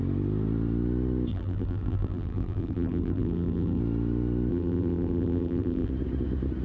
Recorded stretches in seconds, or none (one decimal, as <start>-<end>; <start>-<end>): 0.0-1.3; 3.8-4.5; 5.9-6.6